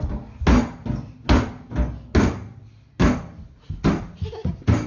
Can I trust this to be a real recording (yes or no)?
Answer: yes